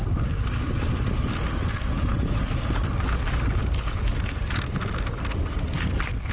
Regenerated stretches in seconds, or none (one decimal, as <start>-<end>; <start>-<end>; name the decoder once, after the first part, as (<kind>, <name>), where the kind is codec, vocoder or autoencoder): none